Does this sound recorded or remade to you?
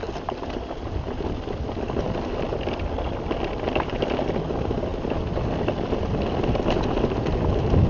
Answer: recorded